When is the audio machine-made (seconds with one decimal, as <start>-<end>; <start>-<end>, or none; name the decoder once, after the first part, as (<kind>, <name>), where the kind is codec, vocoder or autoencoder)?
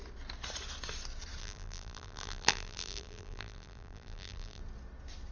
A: 1.4-4.6 (vocoder, BigVGAN v2)